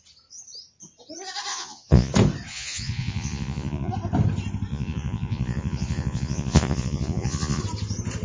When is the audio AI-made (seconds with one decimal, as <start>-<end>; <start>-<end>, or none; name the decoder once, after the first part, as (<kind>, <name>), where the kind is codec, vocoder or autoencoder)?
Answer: 1.5-2.1 (vocoder, Vocos); 2.5-3.9; 4.7-7.6